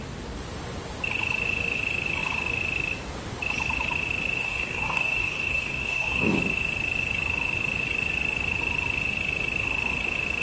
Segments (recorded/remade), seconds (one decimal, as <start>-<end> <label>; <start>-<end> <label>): 0.0-4.4 recorded; 4.4-6.4 remade; 6.4-10.4 recorded